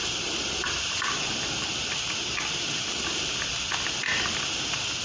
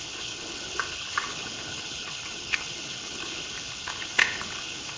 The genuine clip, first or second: first